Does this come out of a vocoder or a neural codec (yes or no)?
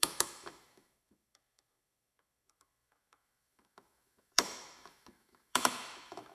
yes